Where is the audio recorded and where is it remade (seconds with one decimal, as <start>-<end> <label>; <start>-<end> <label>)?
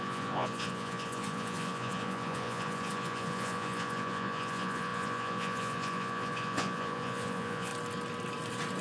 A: 0.0-7.7 remade; 7.7-8.8 recorded